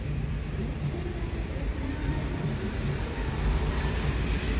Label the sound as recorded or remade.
remade